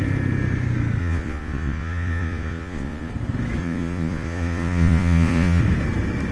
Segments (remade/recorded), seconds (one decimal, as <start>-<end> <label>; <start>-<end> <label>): 0.0-1.0 recorded; 1.0-3.1 remade; 3.1-3.6 recorded; 3.6-5.6 remade; 5.6-6.3 recorded